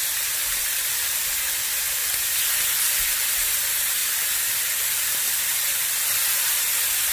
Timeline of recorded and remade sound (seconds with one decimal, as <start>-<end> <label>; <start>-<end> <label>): 0.0-0.4 recorded; 0.4-1.3 remade; 1.3-2.0 recorded; 2.0-3.3 remade; 3.3-4.0 recorded; 4.0-6.6 remade; 6.6-7.1 recorded